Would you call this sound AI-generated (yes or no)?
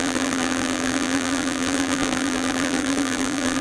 yes